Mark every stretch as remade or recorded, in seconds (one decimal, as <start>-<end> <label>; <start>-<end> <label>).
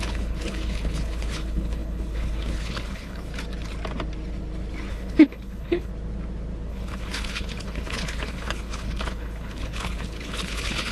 0.0-3.3 remade; 3.3-4.9 recorded; 4.9-5.9 remade; 5.9-6.7 recorded; 6.7-10.9 remade